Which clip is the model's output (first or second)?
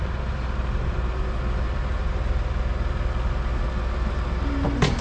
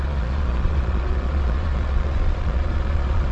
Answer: second